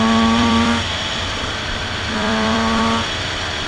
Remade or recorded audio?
remade